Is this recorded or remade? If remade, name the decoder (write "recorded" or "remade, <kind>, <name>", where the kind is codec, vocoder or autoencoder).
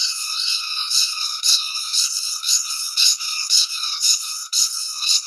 remade, codec, SNAC